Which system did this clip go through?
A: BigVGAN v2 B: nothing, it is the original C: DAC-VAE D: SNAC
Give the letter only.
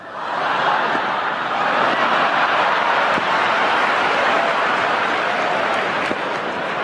A